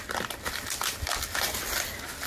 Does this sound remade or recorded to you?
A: recorded